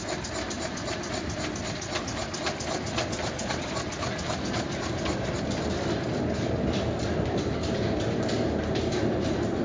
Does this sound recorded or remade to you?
recorded